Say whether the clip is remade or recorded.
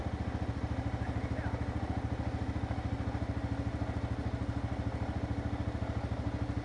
recorded